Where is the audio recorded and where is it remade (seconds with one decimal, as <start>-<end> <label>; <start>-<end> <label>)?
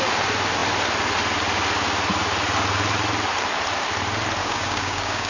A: 0.0-4.4 recorded; 4.4-5.3 remade